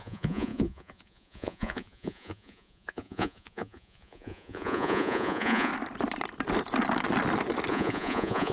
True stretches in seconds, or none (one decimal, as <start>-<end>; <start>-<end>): 5.7-7.7